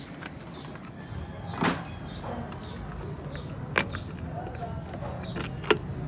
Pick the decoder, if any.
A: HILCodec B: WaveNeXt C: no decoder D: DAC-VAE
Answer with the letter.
C